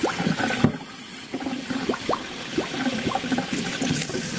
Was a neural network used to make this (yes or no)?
no